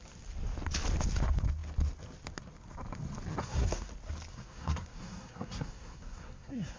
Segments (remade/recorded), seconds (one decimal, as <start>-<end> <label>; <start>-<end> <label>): 0.0-3.4 recorded; 3.4-3.9 remade; 3.9-4.3 recorded; 4.3-6.8 remade